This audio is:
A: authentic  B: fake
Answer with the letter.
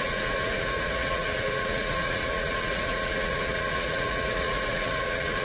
B